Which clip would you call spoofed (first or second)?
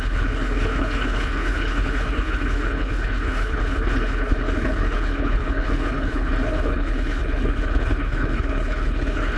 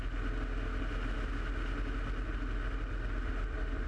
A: first